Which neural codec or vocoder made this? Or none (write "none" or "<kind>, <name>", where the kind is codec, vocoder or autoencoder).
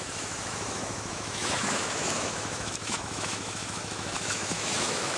autoencoder, DAC-VAE